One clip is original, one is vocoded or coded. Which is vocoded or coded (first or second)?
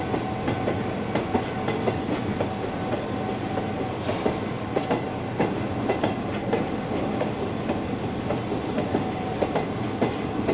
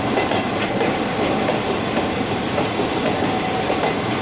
second